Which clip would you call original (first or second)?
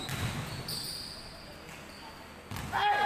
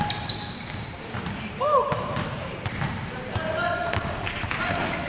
first